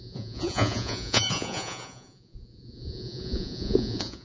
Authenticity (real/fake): fake